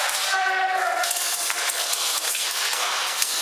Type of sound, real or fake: fake